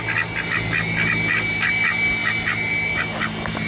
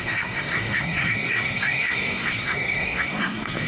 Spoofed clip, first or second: second